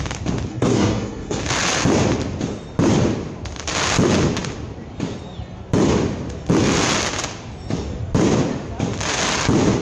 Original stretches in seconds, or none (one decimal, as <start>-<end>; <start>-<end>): 0.0-0.5; 1.4-9.8